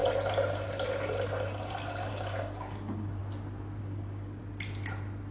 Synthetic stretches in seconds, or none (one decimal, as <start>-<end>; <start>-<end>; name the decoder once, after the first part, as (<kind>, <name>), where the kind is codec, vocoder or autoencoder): 2.1-3.2 (codec, DAC); 3.8-4.4